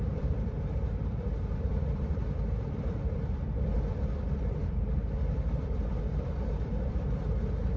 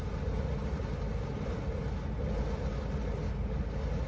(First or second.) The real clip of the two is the second